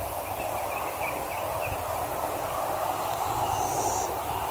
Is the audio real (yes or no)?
yes